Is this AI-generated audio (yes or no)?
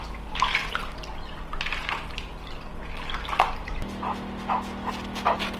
no